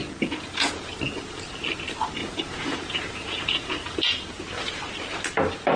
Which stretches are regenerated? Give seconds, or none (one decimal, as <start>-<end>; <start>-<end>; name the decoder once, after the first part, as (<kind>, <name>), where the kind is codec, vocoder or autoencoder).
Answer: 0.0-0.9 (vocoder, Vocos); 2.2-4.3